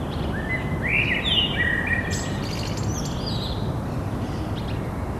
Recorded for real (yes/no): yes